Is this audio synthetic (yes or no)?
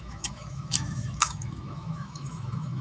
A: yes